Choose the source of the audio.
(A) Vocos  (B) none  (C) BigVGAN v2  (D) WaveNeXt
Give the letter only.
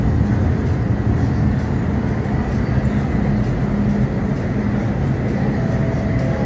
B